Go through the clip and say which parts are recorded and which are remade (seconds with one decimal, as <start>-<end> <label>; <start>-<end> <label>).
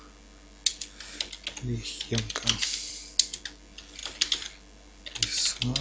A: 0.0-5.8 recorded